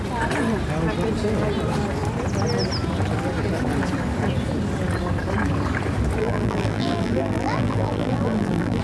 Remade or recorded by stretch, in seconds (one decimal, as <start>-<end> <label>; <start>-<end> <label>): 0.0-6.2 recorded; 6.2-8.8 remade